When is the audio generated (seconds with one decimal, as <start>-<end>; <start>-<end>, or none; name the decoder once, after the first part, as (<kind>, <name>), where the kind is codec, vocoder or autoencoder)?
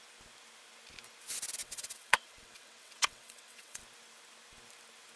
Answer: 1.6-3.8 (vocoder, WaveNeXt)